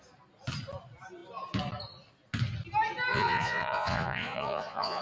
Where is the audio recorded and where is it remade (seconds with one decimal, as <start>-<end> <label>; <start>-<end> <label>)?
0.0-3.1 recorded; 3.1-5.0 remade